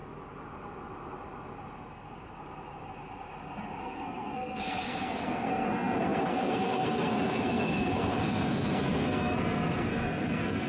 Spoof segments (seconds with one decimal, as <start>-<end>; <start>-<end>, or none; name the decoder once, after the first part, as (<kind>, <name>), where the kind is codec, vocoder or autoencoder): 3.8-10.7 (codec, SNAC)